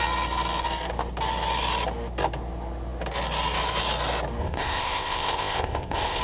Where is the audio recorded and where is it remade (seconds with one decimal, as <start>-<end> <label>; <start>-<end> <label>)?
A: 0.0-4.4 recorded; 4.4-6.2 remade